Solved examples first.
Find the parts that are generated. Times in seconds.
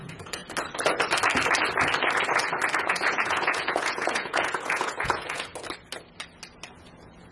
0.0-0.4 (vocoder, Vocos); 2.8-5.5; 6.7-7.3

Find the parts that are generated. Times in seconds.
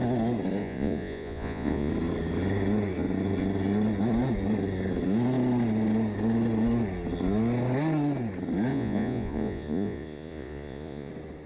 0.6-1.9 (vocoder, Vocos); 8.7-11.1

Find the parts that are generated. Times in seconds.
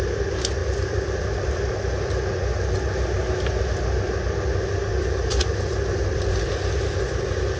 0.6-1.7 (vocoder, BigVGAN v2); 4.9-6.3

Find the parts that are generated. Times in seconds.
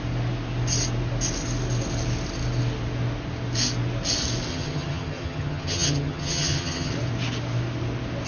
4.5-6.9 (vocoder, HiFi-GAN)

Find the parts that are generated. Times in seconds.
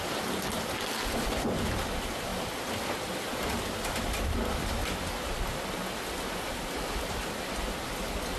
none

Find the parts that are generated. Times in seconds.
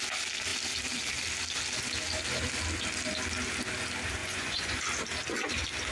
4.2-4.8 (vocoder, Vocos)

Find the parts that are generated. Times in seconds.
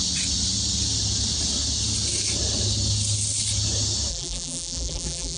4.1-5.4 (vocoder, BigVGAN v2)